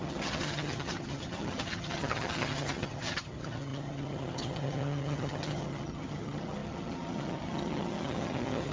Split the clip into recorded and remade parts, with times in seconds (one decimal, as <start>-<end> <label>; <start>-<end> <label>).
0.0-8.7 remade